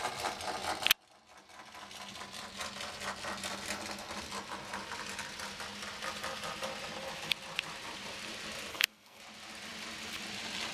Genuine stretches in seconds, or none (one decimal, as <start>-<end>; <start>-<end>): 0.0-8.7; 9.2-10.7